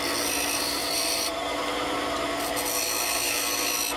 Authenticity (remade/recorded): recorded